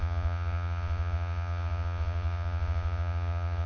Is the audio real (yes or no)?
no